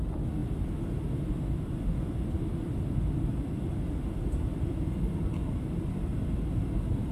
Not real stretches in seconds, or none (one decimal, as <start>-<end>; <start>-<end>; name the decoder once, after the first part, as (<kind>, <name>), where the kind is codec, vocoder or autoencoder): none